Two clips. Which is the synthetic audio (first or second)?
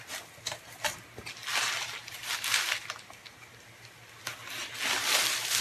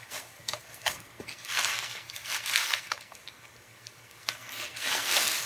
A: second